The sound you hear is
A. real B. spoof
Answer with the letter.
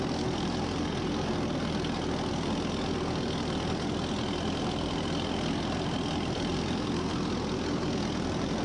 A